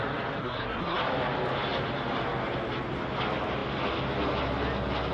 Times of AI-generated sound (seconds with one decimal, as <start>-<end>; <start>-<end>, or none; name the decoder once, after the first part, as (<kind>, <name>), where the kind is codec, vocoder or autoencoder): 0.4-1.0 (codec, SNAC)

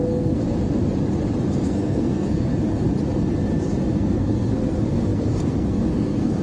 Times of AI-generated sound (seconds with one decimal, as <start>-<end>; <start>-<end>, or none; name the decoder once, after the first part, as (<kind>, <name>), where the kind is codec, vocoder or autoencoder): 0.0-0.4 (codec, SNAC); 1.4-2.5; 3.9-6.4

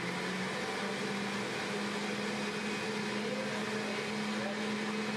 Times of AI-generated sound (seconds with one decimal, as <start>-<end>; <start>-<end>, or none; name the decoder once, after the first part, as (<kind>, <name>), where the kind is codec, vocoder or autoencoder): none

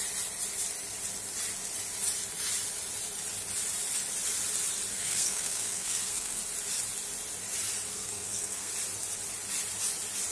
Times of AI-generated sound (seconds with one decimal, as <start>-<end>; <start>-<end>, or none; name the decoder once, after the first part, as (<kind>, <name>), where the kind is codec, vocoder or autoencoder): 4.9-6.4 (codec, SNAC); 7.9-8.7

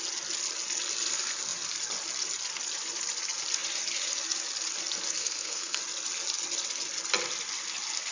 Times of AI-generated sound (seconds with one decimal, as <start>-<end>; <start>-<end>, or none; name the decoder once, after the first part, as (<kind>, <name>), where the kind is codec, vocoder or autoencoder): 5.2-5.8 (codec, SNAC)

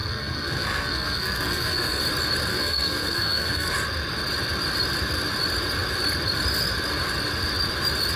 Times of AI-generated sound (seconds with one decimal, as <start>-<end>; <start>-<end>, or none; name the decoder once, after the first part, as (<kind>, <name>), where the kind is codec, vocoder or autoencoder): 0.0-2.0 (codec, SNAC); 2.5-3.7

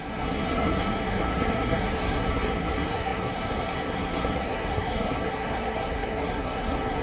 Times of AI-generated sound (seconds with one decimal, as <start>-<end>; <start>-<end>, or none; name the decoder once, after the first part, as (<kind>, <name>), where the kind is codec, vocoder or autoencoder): 0.0-7.0 (codec, SNAC)